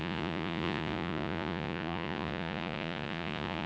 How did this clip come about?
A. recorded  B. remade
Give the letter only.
B